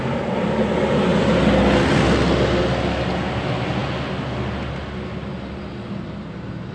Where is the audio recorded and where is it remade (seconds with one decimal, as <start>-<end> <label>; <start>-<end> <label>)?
0.0-6.7 recorded